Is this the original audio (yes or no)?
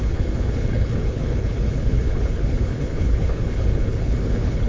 no